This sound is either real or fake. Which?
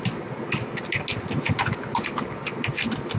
real